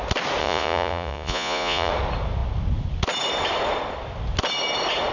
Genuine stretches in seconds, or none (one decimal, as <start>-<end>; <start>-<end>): 0.0-0.4; 1.9-5.1